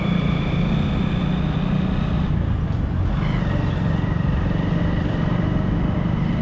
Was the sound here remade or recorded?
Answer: recorded